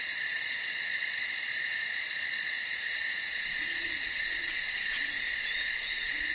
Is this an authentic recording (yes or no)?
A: no